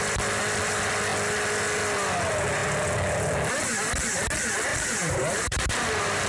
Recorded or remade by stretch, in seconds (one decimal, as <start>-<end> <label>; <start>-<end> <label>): 0.0-4.7 recorded; 4.7-6.3 remade